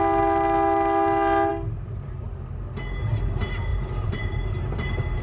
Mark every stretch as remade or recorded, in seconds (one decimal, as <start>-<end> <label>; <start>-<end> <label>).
0.0-3.7 recorded; 3.7-5.2 remade

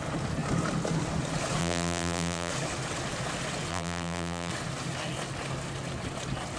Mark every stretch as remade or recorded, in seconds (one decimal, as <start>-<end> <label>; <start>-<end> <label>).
0.0-1.6 recorded; 1.6-2.5 remade; 2.5-3.7 recorded; 3.7-4.5 remade; 4.5-6.6 recorded

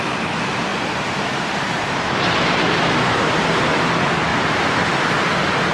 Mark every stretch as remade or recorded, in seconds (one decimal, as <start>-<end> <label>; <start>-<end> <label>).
0.0-0.7 recorded; 0.7-3.6 remade; 3.6-4.3 recorded; 4.3-5.1 remade; 5.1-5.7 recorded

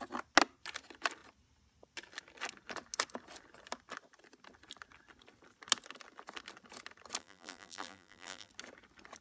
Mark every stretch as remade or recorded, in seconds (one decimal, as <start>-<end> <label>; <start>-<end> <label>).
0.0-7.2 recorded; 7.2-8.5 remade; 8.5-9.2 recorded

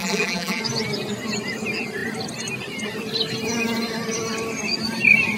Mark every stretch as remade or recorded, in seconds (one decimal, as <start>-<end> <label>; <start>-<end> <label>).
0.0-0.6 remade; 0.6-5.4 recorded

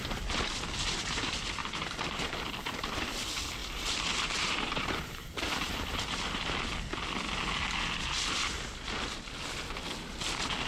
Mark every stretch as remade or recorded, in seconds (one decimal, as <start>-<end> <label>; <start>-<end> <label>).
0.0-1.6 recorded; 1.6-3.0 remade; 3.0-3.6 recorded; 3.6-6.4 remade; 6.4-10.7 recorded